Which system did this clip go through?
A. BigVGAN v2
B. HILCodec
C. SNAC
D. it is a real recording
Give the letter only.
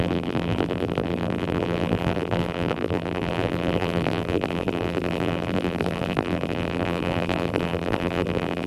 A